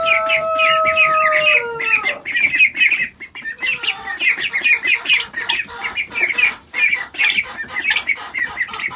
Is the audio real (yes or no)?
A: no